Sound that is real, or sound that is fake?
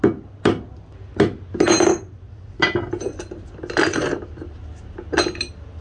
real